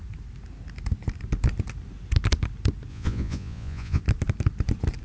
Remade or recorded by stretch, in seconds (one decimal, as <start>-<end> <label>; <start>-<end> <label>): 0.0-2.9 recorded; 2.9-4.0 remade; 4.0-5.0 recorded